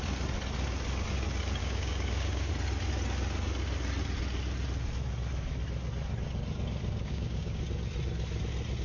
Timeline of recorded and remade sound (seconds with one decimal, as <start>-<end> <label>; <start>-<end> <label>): 0.0-1.6 recorded; 1.6-2.5 remade; 2.5-7.0 recorded; 7.0-7.6 remade; 7.6-8.8 recorded